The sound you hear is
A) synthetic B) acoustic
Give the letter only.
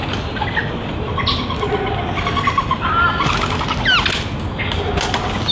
B